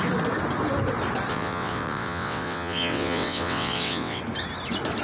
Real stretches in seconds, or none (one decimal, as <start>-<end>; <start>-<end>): 0.0-1.3; 4.2-5.0